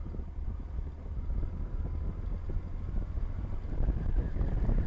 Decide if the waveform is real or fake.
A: real